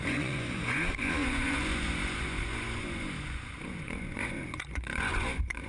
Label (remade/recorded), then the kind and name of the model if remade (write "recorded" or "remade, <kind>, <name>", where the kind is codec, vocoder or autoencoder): remade, vocoder, Vocos